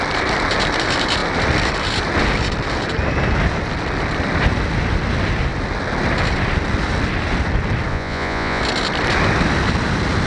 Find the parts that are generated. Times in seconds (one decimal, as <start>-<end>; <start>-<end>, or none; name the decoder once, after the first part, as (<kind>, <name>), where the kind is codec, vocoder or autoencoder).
7.9-8.6 (vocoder, Vocos)